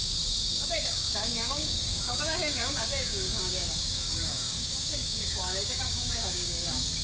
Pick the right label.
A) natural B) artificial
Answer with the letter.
B